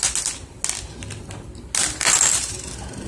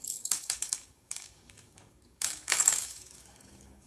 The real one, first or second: first